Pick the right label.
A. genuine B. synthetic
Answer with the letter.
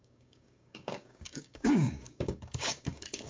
B